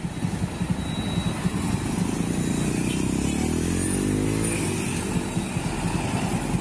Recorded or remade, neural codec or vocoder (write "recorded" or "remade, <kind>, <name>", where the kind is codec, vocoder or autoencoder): recorded